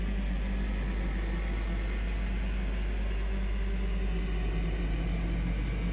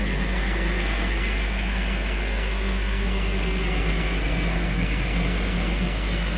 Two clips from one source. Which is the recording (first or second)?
first